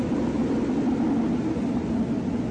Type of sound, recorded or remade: recorded